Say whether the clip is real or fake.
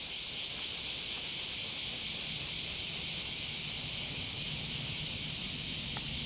real